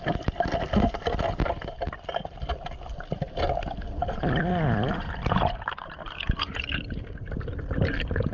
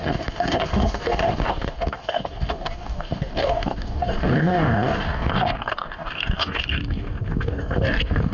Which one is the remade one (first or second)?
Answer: second